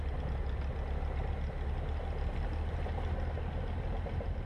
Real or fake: real